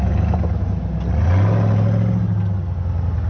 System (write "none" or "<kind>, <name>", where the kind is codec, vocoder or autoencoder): none